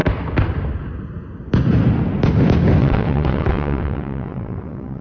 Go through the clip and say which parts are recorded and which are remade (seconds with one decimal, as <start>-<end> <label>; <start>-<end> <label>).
0.0-2.8 recorded; 2.8-5.0 remade